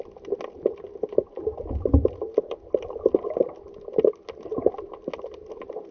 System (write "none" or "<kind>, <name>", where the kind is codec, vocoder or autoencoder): none